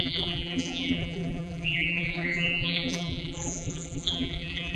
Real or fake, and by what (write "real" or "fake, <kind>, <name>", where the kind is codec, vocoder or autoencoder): fake, vocoder, BigVGAN v2